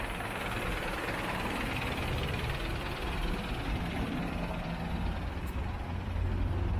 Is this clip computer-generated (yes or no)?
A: no